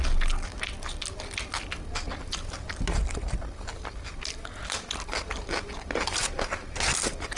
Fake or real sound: real